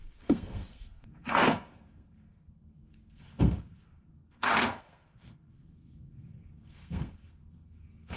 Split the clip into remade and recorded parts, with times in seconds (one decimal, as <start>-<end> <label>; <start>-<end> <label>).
0.0-8.2 remade